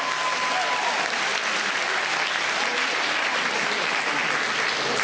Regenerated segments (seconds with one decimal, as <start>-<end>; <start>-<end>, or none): none